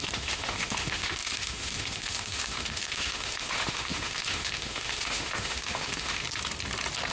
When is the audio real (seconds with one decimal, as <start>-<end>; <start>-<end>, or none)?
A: 6.2-7.1